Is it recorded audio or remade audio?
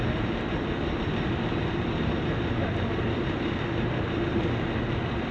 recorded